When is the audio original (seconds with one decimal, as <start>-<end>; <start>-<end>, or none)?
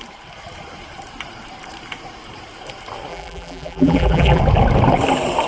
0.0-3.1; 4.4-5.5